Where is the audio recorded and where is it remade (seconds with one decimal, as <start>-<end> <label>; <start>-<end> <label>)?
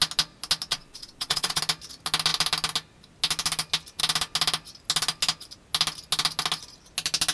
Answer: 0.0-0.7 recorded; 0.7-1.6 remade; 1.6-7.3 recorded